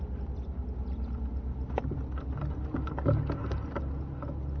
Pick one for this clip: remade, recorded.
recorded